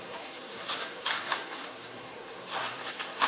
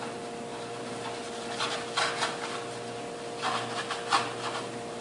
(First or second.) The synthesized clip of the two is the first